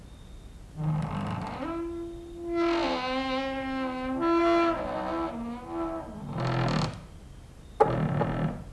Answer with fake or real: real